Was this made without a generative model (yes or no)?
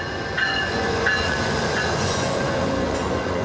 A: no